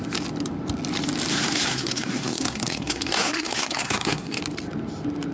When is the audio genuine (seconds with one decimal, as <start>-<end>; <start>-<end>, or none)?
0.0-1.3; 4.4-5.3